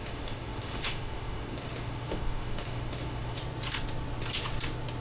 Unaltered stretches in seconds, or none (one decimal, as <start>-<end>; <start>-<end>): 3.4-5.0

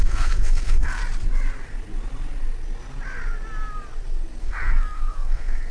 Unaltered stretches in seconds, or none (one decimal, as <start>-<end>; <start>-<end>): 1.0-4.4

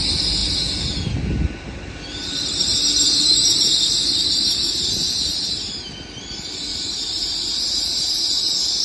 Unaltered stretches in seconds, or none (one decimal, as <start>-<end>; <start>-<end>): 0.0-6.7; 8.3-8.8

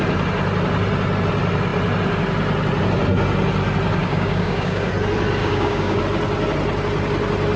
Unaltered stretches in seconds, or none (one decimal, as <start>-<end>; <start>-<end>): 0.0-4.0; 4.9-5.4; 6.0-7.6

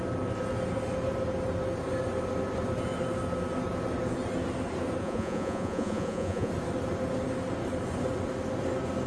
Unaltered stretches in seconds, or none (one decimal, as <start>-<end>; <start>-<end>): 0.0-5.0; 6.5-9.1

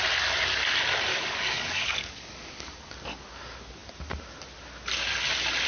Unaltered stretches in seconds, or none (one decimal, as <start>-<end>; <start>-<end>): 0.0-1.1; 2.9-5.7

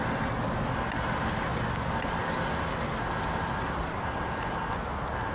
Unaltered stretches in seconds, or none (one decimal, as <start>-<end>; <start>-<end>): 0.0-5.3